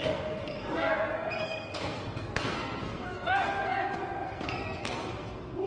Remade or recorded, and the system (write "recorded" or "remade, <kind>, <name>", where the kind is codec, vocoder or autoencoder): remade, codec, SNAC